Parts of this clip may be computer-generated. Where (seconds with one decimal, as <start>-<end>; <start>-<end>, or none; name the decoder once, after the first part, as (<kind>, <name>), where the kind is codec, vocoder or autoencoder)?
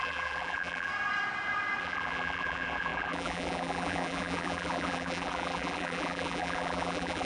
0.0-0.9 (vocoder, BigVGAN v2); 1.8-7.3